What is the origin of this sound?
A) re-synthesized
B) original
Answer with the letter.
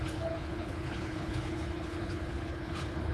A